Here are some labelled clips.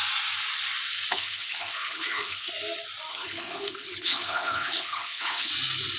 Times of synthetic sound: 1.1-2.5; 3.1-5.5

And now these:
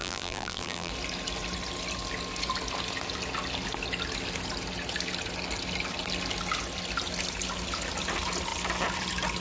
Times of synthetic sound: 0.0-0.9